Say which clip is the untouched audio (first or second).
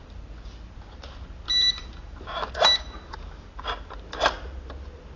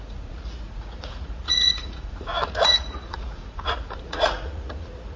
first